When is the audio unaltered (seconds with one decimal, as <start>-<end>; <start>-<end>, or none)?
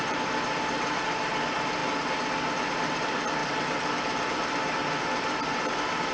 1.8-2.7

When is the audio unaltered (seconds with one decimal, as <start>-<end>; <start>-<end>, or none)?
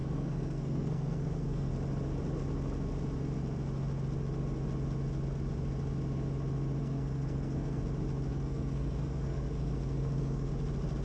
1.7-6.8; 7.8-8.3; 10.5-11.0